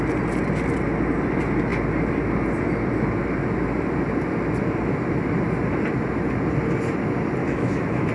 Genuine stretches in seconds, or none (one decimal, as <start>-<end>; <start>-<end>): 0.0-7.4